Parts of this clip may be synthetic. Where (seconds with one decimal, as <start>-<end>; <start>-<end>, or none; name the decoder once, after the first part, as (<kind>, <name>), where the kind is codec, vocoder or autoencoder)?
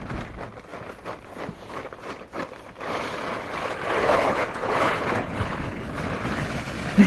4.0-6.0 (codec, HILCodec)